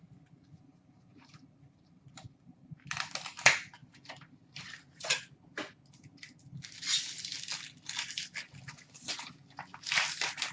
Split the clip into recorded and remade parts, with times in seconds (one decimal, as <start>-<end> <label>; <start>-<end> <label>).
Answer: 0.0-0.7 recorded; 0.7-3.1 remade; 3.1-3.8 recorded; 3.8-5.2 remade; 5.2-10.5 recorded